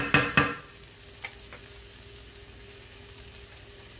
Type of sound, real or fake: real